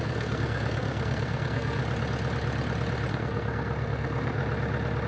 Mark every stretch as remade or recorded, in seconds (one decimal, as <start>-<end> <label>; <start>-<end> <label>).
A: 0.0-1.8 remade; 1.8-3.1 recorded; 3.1-4.4 remade; 4.4-5.1 recorded

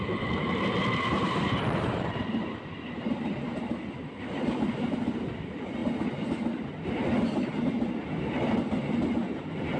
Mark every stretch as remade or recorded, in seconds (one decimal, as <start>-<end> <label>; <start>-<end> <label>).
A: 0.0-5.8 remade; 5.8-9.8 recorded

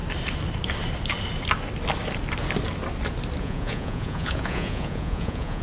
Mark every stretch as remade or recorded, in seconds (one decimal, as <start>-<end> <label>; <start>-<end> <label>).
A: 0.0-3.4 recorded; 3.4-5.6 remade

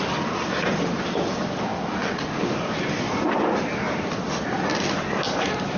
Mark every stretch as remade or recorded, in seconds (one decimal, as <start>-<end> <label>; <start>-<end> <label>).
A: 0.0-5.8 recorded

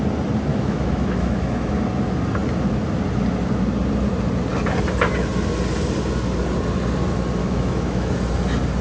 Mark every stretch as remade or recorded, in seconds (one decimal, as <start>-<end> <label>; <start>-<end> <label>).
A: 0.0-0.5 recorded; 0.5-1.7 remade; 1.7-7.4 recorded; 7.4-8.1 remade; 8.1-8.8 recorded

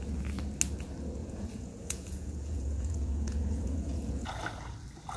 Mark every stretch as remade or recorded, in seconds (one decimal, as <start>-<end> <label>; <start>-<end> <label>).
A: 0.0-1.2 recorded; 1.2-4.3 remade; 4.3-5.2 recorded